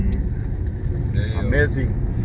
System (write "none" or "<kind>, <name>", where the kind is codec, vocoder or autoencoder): none